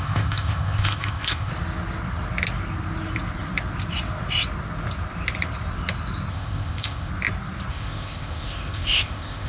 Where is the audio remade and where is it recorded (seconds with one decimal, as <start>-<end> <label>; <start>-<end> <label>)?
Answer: 0.0-1.5 remade; 1.5-6.3 recorded; 6.3-7.1 remade; 7.1-7.7 recorded; 7.7-9.5 remade